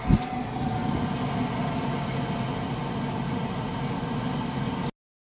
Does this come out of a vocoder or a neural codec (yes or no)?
no